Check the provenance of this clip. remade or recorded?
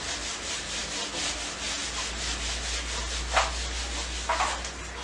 recorded